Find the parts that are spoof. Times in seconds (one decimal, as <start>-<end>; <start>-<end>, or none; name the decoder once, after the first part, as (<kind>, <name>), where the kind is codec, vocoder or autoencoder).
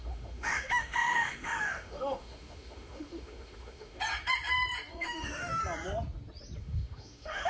0.0-4.0 (autoencoder, DAC-VAE); 4.9-5.6; 6.6-7.5